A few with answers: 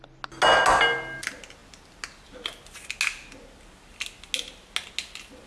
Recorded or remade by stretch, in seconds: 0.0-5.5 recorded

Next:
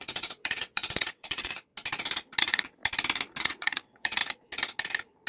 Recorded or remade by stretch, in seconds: 0.0-1.7 remade; 1.7-2.4 recorded; 2.4-2.8 remade; 2.8-3.4 recorded; 3.4-4.2 remade; 4.2-5.3 recorded

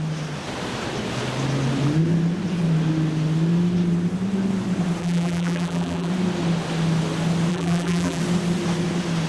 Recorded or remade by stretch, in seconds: 0.0-5.0 recorded; 5.0-6.1 remade; 6.1-7.5 recorded; 7.5-8.2 remade; 8.2-9.3 recorded

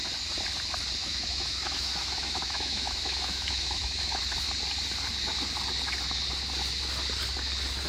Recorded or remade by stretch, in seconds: 0.0-1.0 recorded; 1.0-4.2 remade; 4.2-7.9 recorded